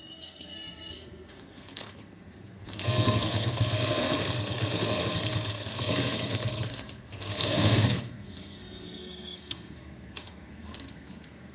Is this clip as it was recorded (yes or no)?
no